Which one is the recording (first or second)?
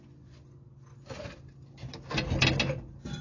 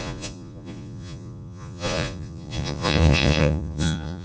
first